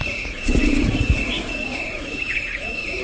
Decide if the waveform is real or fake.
fake